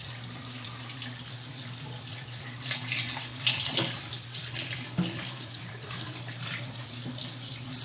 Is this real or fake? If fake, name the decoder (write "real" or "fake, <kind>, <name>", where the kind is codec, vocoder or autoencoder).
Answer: fake, vocoder, BigVGAN v2